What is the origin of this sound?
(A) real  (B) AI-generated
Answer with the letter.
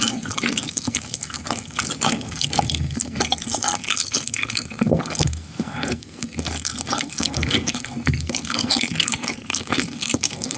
B